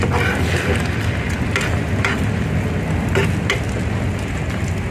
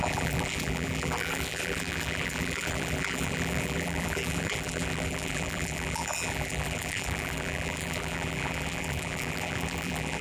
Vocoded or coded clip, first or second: second